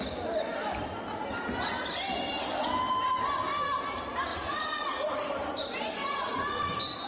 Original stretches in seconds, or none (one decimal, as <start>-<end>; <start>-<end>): 0.0-4.3; 5.3-6.0; 6.6-7.1